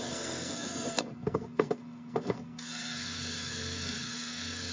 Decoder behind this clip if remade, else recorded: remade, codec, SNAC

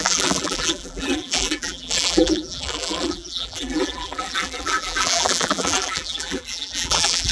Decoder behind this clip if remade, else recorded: remade, vocoder, BigVGAN v2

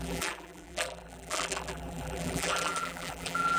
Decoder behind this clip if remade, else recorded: remade, vocoder, BigVGAN v2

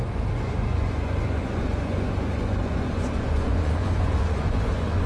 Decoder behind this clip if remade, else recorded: remade, vocoder, Vocos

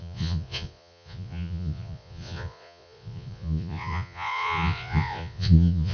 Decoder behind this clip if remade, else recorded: remade, vocoder, Vocos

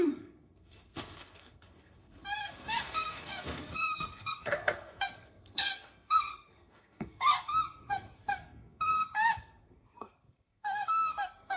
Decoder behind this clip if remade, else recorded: remade, codec, SNAC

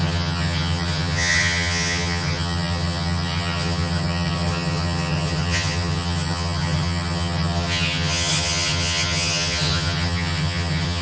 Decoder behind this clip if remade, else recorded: remade, vocoder, HiFi-GAN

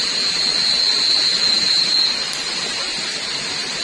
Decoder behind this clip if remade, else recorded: recorded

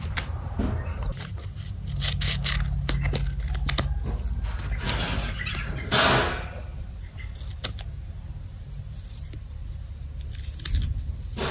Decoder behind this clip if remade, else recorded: recorded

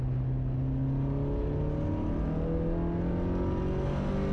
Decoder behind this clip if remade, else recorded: recorded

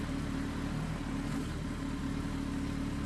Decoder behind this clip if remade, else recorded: recorded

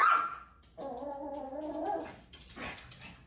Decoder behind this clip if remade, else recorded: recorded